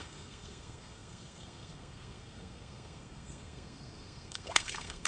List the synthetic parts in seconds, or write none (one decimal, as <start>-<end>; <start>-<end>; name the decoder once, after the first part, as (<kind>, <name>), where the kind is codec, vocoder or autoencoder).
0.0-5.1 (codec, SNAC)